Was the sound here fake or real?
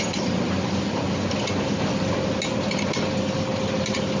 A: real